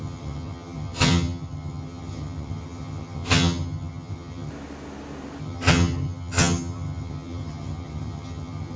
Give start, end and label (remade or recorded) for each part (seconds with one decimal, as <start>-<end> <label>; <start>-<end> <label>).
0.0-4.5 remade; 4.5-5.4 recorded; 5.4-8.8 remade